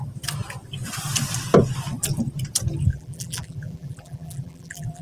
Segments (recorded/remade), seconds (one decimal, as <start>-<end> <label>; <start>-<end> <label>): 0.0-2.9 recorded; 2.9-5.0 remade